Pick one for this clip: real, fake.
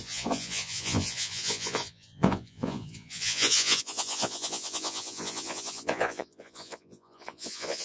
fake